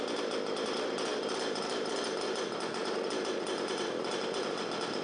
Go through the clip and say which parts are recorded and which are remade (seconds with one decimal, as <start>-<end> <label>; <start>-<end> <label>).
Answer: 0.0-5.0 recorded